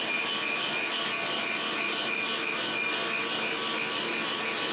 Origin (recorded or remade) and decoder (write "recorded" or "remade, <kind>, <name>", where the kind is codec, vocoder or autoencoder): recorded